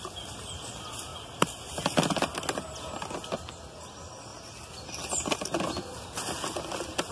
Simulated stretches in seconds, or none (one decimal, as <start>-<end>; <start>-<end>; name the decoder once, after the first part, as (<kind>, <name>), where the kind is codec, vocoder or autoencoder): none